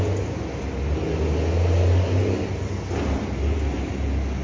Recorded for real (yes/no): yes